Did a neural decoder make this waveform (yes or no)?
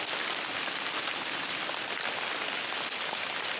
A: no